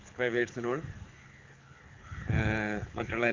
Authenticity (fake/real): fake